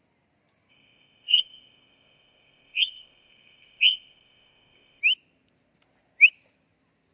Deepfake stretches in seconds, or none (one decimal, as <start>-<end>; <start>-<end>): 0.7-5.0